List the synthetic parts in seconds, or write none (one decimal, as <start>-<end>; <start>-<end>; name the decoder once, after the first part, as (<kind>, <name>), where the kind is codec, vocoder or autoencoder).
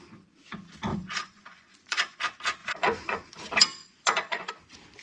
0.9-2.2 (vocoder, Vocos); 2.6-3.3; 3.8-4.5